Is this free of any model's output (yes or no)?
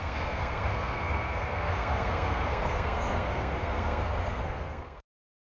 no